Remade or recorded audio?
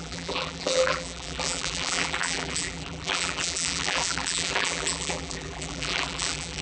remade